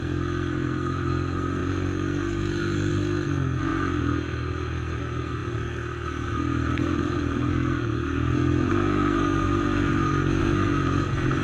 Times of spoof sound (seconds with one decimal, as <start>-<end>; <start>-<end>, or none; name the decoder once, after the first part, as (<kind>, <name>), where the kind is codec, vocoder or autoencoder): 0.0-11.4 (codec, SNAC)